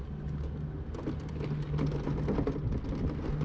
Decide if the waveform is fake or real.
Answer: real